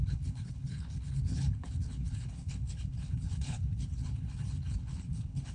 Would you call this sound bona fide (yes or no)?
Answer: no